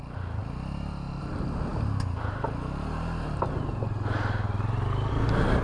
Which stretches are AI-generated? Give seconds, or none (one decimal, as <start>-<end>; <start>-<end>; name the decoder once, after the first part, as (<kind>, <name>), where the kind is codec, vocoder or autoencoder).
none